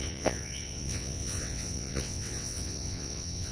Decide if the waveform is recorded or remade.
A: remade